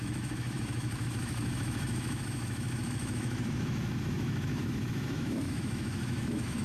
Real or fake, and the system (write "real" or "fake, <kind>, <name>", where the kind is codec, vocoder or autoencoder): fake, autoencoder, DAC-VAE